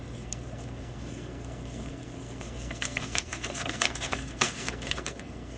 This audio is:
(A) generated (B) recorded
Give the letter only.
A